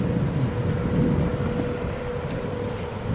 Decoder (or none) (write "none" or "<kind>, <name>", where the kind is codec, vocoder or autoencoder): none